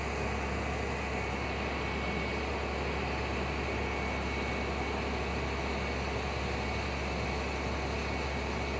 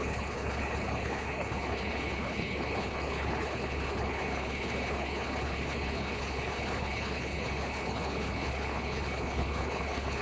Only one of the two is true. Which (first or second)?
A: first